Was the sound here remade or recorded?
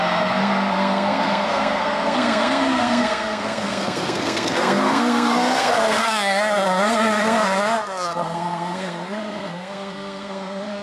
remade